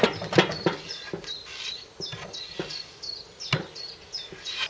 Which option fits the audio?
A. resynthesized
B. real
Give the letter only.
B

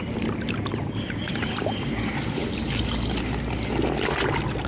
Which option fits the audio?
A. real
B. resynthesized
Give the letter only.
A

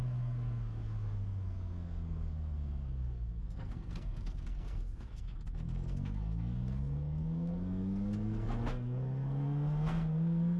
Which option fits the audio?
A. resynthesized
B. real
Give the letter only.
A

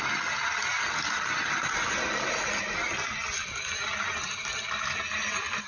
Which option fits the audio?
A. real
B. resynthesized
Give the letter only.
A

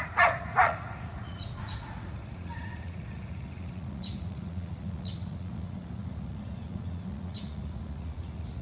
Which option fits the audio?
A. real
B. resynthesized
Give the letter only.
B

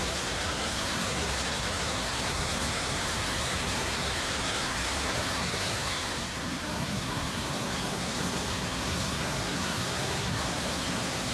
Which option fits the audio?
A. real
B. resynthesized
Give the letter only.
B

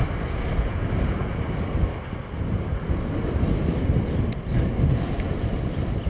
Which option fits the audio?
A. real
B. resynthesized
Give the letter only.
A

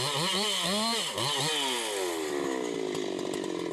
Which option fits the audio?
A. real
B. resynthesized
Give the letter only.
A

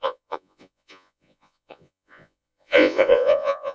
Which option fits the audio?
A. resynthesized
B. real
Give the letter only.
A